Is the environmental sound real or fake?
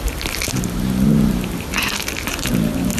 real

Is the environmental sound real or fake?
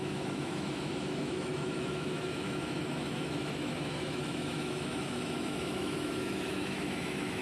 fake